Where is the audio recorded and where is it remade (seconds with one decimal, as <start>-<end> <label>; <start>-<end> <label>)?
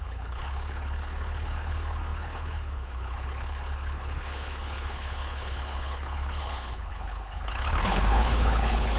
0.0-9.0 remade